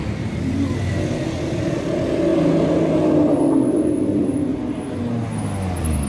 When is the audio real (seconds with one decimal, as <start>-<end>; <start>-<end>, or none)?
0.8-1.6; 2.3-3.7; 4.5-6.1

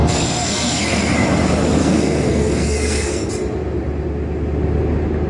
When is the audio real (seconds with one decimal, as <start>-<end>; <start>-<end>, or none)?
1.1-1.8; 3.3-5.3

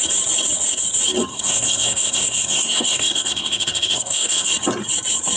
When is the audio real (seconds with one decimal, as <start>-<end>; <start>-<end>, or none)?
0.0-1.3; 4.5-5.4

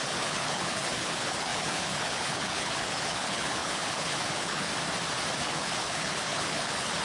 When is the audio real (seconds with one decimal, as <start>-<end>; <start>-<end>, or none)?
4.7-5.4

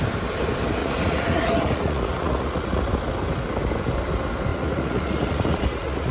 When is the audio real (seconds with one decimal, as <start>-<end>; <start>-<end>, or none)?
0.0-0.8; 2.8-4.5

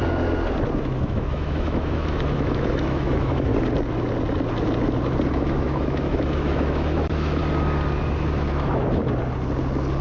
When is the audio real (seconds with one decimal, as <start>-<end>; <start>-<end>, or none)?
0.0-0.8; 3.5-5.3; 7.4-8.5; 9.0-10.0

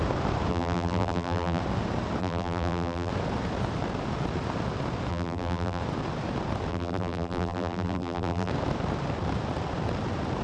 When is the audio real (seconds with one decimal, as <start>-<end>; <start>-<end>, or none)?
0.0-0.5; 1.6-2.2; 3.1-5.1; 5.8-6.7; 8.5-10.4

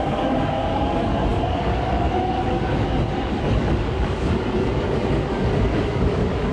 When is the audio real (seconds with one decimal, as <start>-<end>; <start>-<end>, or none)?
none